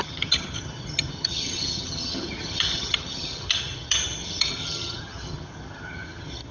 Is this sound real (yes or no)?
no